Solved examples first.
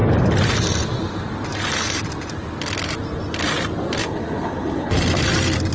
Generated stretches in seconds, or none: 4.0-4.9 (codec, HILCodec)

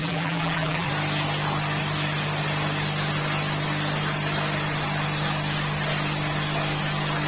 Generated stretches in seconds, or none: 0.0-0.9 (vocoder, BigVGAN v2)

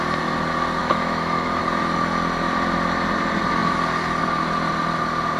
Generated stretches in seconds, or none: 0.8-1.6 (autoencoder, DAC-VAE)

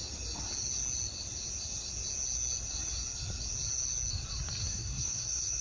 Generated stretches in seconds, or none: 4.6-5.6 (codec, SNAC)